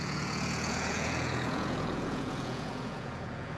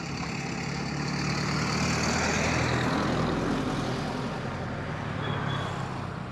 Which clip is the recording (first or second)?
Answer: second